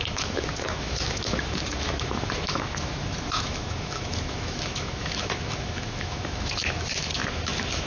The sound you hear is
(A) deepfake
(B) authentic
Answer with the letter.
A